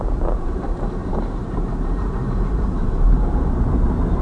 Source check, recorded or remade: remade